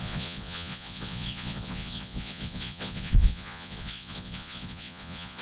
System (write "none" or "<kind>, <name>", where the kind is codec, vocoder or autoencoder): vocoder, Vocos